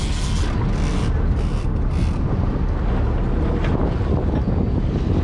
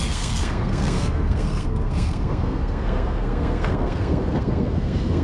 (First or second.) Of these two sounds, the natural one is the first